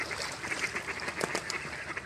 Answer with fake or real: real